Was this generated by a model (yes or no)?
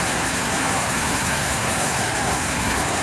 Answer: yes